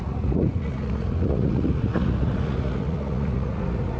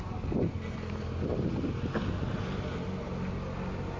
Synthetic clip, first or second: first